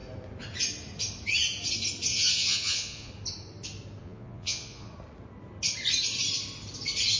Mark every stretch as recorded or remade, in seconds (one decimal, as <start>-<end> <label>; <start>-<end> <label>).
0.0-2.1 recorded; 2.1-3.1 remade; 3.1-4.0 recorded; 4.0-4.9 remade; 4.9-7.2 recorded